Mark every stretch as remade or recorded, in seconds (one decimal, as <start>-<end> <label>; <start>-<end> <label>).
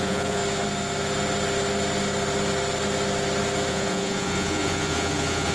0.0-0.4 remade; 0.4-3.7 recorded; 3.7-5.5 remade